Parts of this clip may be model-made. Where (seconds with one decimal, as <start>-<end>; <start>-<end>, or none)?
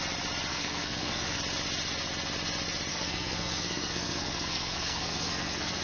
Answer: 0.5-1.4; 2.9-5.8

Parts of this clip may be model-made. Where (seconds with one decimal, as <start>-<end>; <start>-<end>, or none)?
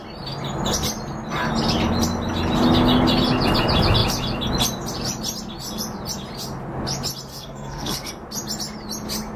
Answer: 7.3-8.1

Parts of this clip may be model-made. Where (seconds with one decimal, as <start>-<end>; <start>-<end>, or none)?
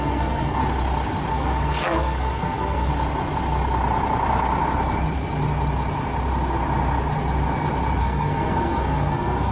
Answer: 0.0-0.6; 1.3-2.9; 8.0-9.5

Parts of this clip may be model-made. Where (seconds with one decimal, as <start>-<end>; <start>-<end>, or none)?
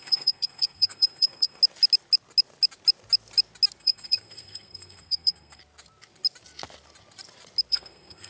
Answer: 0.0-1.6; 3.8-5.6; 7.7-8.3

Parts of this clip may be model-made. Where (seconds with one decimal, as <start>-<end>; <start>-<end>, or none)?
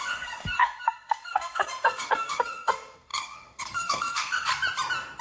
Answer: 0.0-4.5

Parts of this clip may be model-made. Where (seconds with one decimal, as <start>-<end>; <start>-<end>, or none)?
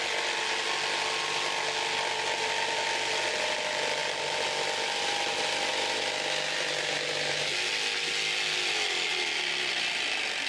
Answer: none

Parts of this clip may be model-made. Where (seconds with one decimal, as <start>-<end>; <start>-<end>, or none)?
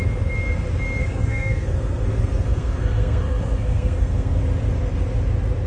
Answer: 1.0-4.4